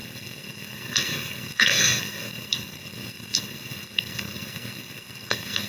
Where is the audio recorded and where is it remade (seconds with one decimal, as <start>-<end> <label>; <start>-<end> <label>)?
0.0-5.7 remade